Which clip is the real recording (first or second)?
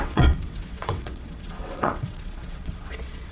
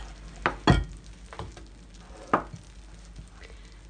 second